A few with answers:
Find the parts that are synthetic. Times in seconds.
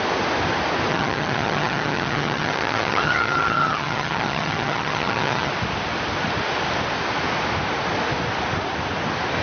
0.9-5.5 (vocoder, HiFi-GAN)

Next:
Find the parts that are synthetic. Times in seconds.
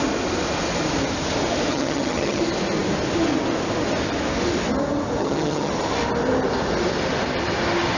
1.7-2.4 (vocoder, HiFi-GAN); 5.2-5.7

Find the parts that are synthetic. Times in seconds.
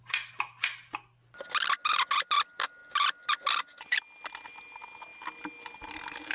none